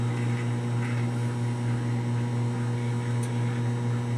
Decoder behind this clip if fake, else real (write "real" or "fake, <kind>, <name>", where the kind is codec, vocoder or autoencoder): real